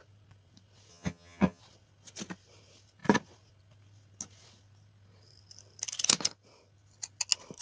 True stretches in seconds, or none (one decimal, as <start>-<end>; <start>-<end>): 0.0-0.9; 1.6-7.6